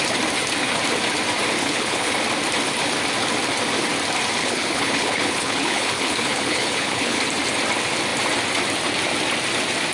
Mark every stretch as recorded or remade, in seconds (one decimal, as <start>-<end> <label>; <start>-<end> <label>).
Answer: 0.0-1.6 recorded; 1.6-2.1 remade; 2.1-4.4 recorded; 4.4-7.2 remade; 7.2-9.9 recorded